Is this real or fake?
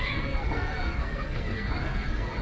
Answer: fake